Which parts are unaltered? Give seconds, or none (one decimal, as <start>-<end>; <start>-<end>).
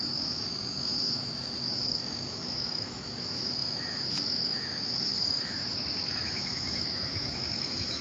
none